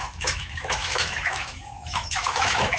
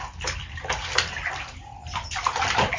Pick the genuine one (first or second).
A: second